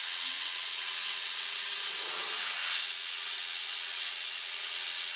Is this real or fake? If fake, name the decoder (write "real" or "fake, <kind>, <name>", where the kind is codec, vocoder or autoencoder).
fake, vocoder, WaveNeXt